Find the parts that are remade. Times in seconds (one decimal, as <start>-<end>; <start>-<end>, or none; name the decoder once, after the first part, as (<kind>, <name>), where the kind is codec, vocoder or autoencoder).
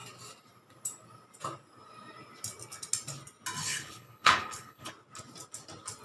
3.6-4.9 (codec, HILCodec)